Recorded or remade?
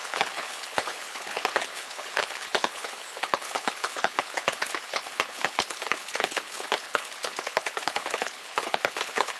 remade